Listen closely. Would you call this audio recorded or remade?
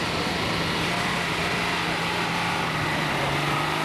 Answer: recorded